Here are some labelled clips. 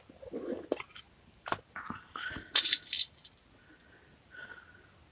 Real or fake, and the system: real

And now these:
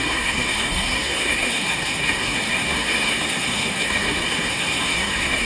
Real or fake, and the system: fake, codec, SNAC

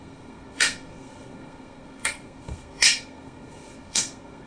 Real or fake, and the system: fake, codec, SNAC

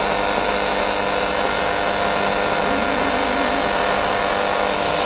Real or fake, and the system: real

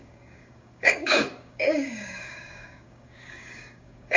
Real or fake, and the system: fake, codec, DAC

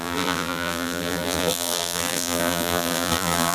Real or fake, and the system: fake, vocoder, BigVGAN v2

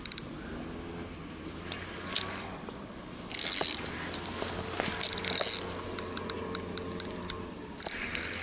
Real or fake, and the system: real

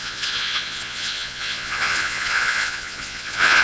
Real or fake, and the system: fake, vocoder, Vocos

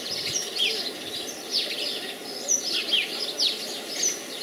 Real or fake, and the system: real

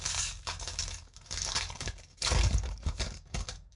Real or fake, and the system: fake, codec, DAC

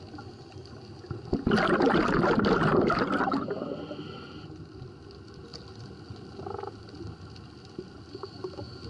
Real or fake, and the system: real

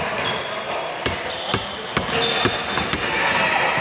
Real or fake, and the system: real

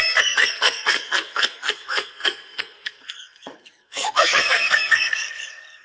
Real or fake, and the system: fake, codec, SNAC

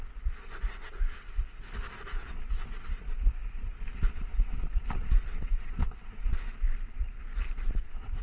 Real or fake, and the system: real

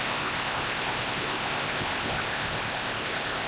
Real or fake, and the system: fake, codec, ZipCodec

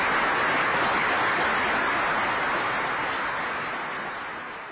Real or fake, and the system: real